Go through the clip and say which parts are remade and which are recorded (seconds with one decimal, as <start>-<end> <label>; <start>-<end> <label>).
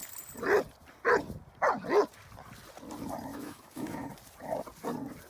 0.0-3.3 recorded; 3.3-4.1 remade; 4.1-5.3 recorded